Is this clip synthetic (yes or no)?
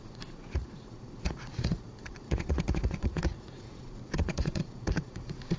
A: yes